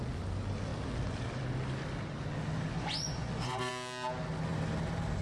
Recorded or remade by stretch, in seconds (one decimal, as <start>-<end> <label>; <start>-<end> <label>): 0.0-2.7 recorded; 2.7-3.7 remade; 3.7-5.2 recorded